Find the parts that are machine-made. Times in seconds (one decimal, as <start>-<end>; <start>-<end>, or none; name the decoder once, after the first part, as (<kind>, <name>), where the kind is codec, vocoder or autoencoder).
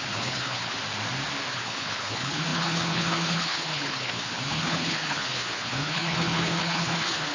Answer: 0.0-0.8 (codec, HILCodec); 1.5-7.3